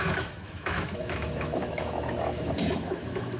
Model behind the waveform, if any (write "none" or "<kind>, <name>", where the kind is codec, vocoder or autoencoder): autoencoder, DAC-VAE